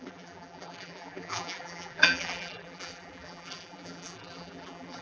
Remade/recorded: remade